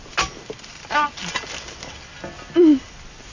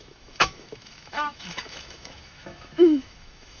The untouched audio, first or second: first